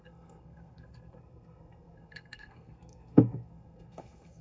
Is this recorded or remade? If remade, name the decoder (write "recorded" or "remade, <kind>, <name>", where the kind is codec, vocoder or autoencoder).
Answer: remade, codec, SNAC